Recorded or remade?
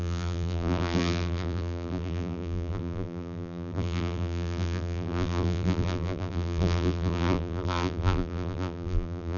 remade